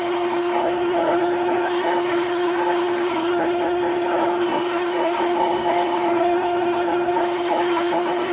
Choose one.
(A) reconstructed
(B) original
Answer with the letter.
A